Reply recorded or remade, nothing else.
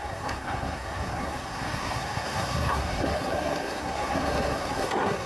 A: remade